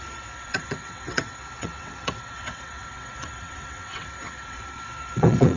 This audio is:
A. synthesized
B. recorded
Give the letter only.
A